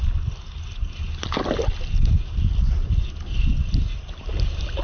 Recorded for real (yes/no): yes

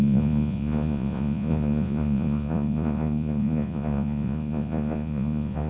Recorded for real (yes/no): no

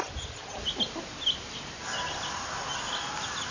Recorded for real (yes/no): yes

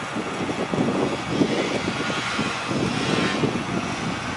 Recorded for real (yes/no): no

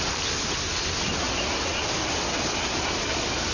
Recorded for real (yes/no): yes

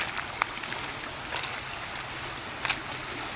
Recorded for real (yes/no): yes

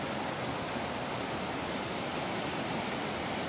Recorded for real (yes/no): yes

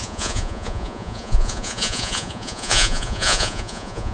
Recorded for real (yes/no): no